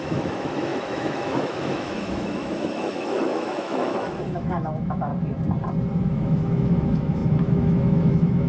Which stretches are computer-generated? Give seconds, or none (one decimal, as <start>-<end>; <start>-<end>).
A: 0.0-5.1; 6.0-8.5